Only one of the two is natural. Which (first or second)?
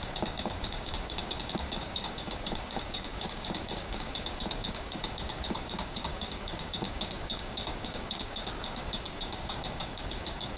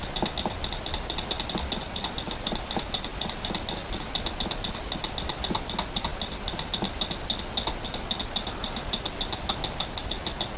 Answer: second